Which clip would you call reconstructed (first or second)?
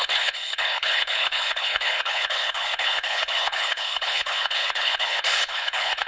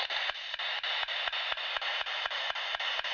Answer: first